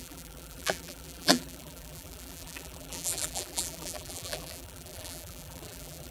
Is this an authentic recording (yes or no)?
no